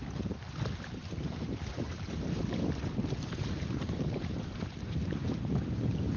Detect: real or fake fake